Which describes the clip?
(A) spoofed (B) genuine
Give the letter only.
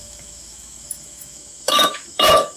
A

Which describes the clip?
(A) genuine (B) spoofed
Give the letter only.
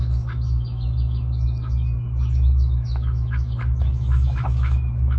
B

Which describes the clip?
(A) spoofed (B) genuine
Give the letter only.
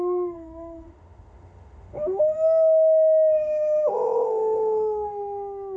A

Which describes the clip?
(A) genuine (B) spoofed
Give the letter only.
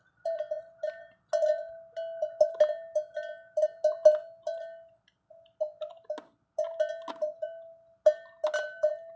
A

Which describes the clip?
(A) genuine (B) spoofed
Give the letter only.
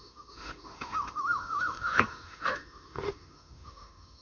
B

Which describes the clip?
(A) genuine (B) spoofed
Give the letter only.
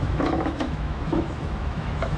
B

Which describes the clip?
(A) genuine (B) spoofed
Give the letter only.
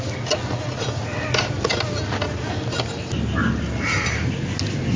A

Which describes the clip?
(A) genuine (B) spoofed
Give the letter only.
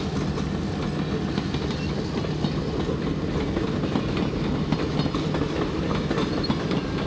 A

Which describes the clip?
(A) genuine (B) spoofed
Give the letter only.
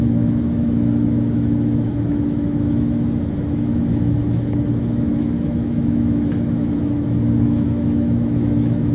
B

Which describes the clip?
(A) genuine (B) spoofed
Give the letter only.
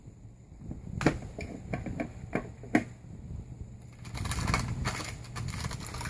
A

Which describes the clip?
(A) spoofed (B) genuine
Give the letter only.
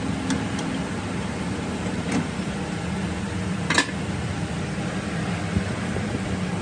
B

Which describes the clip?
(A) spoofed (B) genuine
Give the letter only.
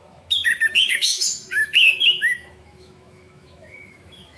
A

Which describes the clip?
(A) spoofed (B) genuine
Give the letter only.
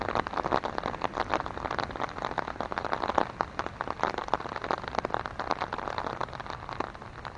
B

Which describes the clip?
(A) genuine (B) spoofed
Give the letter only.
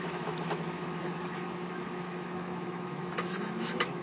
B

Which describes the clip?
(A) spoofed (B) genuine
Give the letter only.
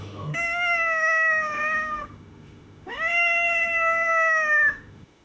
A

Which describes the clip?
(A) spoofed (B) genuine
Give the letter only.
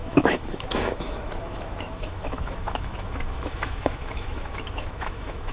A